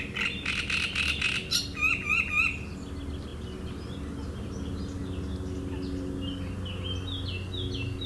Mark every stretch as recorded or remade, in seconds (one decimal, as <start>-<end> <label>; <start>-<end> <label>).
0.0-8.1 recorded